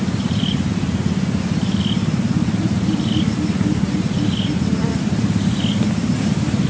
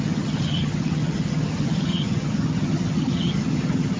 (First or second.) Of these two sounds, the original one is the first